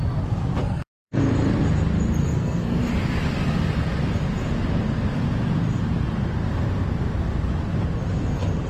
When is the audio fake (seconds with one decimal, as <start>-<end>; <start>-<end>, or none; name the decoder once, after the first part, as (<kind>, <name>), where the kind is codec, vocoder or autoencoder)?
0.6-1.2 (codec, SNAC); 2.2-2.8